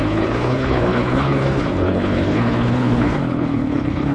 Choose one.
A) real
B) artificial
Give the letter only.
B